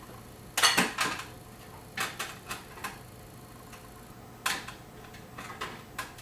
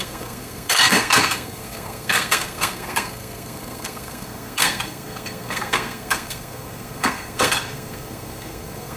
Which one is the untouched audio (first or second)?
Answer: first